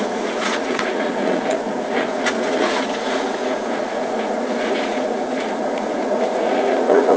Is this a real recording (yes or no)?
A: no